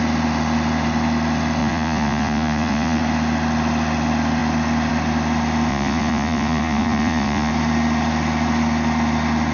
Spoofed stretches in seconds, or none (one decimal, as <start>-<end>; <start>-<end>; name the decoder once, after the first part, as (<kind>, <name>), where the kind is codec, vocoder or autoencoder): 1.6-3.0 (vocoder, Vocos); 5.7-7.5